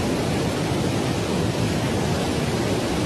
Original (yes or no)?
yes